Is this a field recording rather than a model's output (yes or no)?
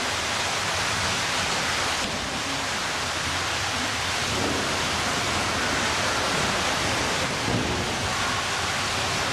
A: yes